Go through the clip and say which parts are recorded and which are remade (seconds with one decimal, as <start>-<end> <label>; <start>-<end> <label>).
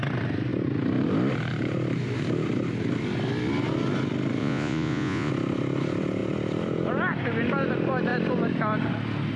0.0-4.4 recorded; 4.4-5.3 remade; 5.3-9.4 recorded